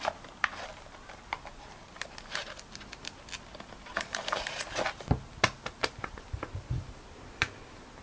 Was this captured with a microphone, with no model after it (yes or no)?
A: yes